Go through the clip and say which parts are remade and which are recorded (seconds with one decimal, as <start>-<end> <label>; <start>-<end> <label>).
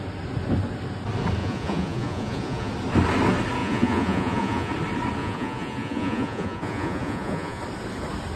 0.0-1.4 recorded; 1.4-2.7 remade; 2.7-3.6 recorded; 3.6-4.7 remade; 4.7-5.2 recorded; 5.2-7.6 remade; 7.6-8.4 recorded